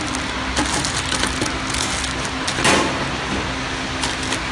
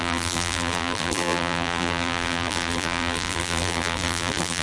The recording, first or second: first